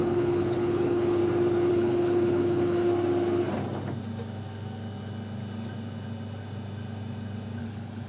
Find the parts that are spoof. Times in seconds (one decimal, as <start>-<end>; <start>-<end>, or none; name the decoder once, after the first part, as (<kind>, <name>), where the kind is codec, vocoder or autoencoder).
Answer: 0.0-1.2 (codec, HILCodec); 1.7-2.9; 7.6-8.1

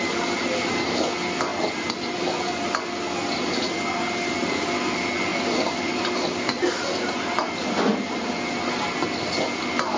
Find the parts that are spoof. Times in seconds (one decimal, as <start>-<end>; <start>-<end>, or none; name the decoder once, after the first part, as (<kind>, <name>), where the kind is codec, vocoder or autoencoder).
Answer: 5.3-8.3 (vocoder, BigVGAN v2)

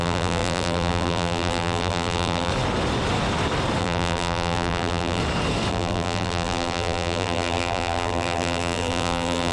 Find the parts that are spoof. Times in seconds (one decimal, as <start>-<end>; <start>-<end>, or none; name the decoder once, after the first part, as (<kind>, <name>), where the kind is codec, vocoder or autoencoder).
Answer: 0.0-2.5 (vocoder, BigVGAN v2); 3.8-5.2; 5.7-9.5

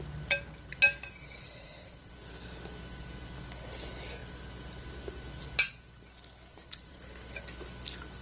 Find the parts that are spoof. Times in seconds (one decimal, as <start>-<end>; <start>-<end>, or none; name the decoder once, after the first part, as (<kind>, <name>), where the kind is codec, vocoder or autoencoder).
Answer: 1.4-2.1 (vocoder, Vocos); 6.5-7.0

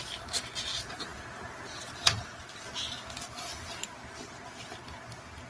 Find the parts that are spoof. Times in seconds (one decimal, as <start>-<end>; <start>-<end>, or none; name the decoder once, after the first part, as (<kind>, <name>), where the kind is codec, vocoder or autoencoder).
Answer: none

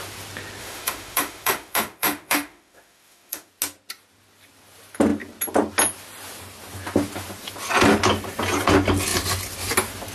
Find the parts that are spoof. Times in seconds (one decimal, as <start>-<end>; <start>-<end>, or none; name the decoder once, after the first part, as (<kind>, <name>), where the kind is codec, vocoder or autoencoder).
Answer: 0.6-3.5 (autoencoder, DAC-VAE)